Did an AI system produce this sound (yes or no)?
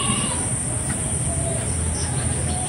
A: yes